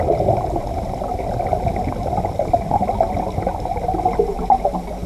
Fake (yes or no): no